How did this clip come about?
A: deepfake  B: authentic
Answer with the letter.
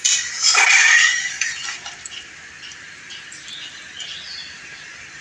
A